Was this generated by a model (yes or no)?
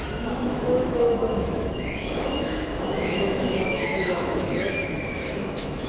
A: yes